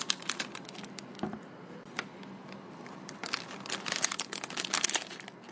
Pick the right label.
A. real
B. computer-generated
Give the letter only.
A